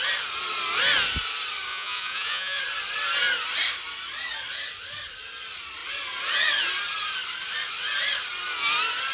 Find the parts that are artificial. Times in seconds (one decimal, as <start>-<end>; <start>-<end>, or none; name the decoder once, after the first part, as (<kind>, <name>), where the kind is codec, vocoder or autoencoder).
1.7-2.6 (vocoder, Vocos)